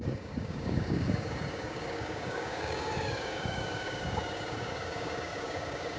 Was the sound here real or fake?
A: fake